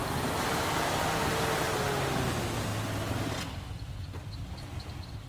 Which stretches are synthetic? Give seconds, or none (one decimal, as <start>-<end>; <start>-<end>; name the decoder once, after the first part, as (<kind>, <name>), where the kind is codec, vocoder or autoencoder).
none